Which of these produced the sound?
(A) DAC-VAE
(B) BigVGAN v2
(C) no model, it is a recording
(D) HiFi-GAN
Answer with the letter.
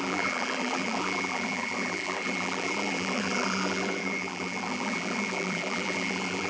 B